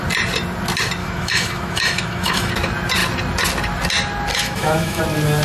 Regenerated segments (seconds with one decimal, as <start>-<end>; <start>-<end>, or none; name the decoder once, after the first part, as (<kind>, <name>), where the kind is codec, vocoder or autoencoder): 1.0-2.5 (autoencoder, DAC-VAE); 4.3-5.0